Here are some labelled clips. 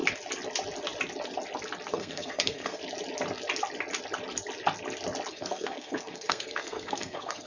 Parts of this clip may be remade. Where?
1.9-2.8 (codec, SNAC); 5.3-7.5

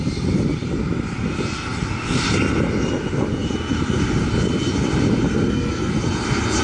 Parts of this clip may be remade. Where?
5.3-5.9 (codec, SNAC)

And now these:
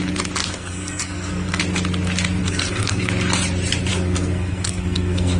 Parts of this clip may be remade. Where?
0.4-1.6 (codec, SNAC); 2.4-3.1; 3.9-5.4

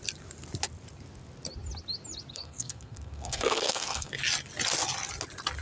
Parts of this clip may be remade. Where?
2.3-4.1 (codec, SNAC)

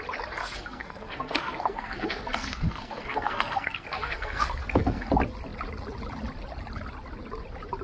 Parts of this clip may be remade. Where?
0.4-5.1 (codec, SNAC)